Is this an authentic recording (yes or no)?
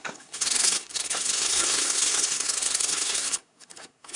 no